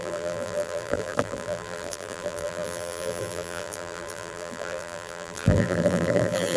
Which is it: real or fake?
fake